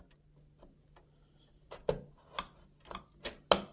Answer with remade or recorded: recorded